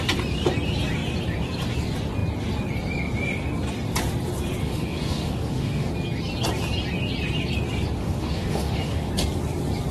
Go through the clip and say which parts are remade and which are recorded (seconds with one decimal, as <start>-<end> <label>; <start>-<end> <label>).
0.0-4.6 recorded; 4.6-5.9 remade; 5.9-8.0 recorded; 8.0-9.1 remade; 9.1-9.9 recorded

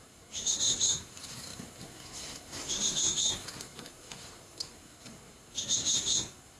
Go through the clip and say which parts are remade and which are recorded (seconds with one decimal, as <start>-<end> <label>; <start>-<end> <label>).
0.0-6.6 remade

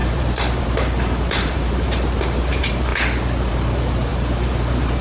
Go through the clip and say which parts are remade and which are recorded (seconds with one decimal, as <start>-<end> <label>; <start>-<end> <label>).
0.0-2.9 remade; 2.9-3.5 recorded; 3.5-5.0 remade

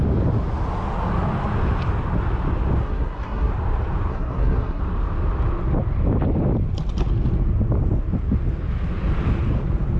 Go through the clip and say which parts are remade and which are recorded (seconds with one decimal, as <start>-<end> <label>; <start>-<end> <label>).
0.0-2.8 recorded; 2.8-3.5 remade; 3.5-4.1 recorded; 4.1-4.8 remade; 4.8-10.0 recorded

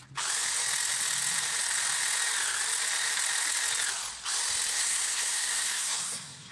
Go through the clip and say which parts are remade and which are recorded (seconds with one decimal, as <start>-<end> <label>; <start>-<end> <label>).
0.0-4.7 recorded; 4.7-6.5 remade

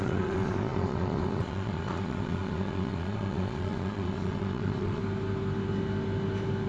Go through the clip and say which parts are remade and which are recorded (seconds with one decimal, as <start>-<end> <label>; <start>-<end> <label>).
0.0-5.0 remade; 5.0-6.7 recorded

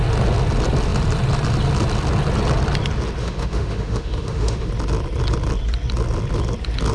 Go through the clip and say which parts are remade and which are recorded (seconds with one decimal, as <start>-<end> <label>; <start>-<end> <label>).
0.0-3.2 recorded; 3.2-4.7 remade; 4.7-6.9 recorded

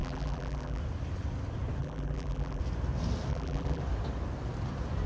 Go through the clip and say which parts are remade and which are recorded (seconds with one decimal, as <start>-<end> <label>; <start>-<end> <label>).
0.0-0.8 remade; 0.8-1.8 recorded; 1.8-2.6 remade; 2.6-3.3 recorded; 3.3-3.8 remade; 3.8-5.1 recorded